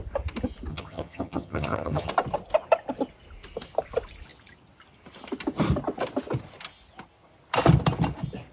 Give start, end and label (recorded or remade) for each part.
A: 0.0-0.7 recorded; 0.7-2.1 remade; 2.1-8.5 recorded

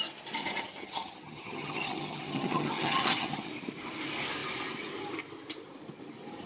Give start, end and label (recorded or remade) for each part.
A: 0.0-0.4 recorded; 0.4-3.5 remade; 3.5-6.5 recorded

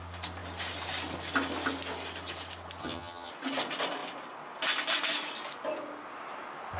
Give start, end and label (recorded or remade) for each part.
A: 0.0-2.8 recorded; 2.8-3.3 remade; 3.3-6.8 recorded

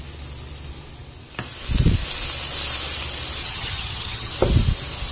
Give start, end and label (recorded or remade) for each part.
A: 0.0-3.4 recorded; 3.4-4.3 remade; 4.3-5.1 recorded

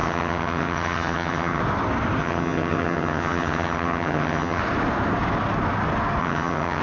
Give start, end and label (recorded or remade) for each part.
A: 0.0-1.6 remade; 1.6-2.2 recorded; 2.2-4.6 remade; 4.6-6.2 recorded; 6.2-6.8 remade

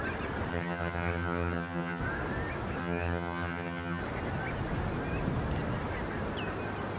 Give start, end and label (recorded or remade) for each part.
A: 0.0-0.5 recorded; 0.5-2.0 remade; 2.0-2.8 recorded; 2.8-4.0 remade; 4.0-7.0 recorded